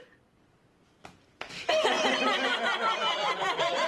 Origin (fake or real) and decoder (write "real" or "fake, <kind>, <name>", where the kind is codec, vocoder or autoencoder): real